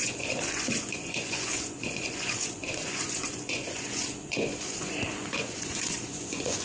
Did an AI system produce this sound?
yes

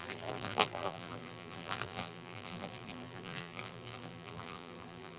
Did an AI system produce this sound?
yes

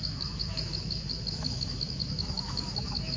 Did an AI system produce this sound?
yes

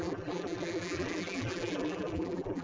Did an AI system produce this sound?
yes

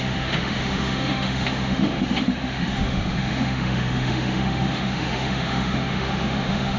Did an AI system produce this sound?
yes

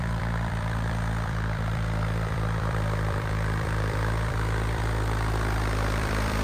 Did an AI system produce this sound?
yes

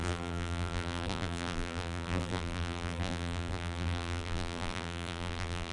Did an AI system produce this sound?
yes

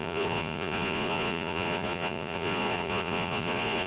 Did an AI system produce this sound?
yes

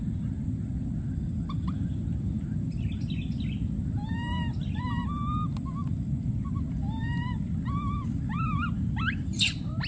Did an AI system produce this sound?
no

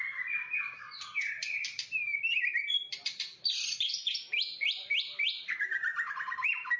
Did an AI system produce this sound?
yes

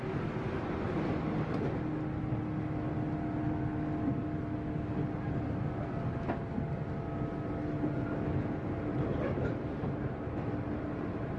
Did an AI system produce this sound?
no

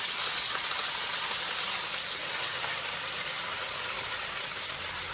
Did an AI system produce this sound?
no